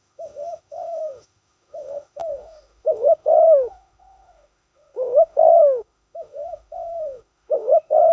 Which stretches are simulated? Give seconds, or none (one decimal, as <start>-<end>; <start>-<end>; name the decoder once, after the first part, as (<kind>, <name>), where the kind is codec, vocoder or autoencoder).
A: 0.0-8.1 (autoencoder, DAC-VAE)